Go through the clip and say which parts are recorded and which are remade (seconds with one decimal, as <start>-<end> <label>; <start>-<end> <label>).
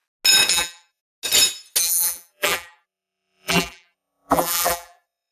0.0-0.5 recorded; 0.5-1.0 remade; 1.0-1.8 recorded; 1.8-5.3 remade